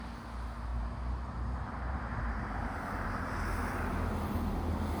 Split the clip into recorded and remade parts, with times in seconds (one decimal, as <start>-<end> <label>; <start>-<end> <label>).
0.0-0.7 recorded; 0.7-3.7 remade; 3.7-5.0 recorded